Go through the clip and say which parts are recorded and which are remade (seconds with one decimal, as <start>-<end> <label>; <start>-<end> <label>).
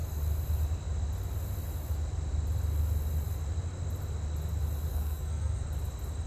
0.0-4.9 recorded; 4.9-5.6 remade; 5.6-6.3 recorded